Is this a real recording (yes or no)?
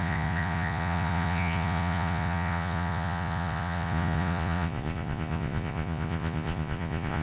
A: no